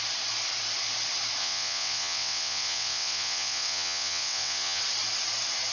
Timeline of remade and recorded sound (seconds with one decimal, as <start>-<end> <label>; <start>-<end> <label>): 0.0-1.4 recorded; 1.4-4.8 remade; 4.8-5.7 recorded